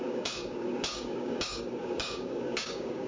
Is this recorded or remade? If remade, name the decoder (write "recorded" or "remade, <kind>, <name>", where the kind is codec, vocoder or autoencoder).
remade, codec, DAC